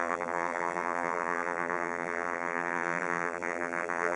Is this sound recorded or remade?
remade